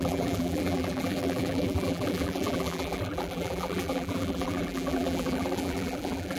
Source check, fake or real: fake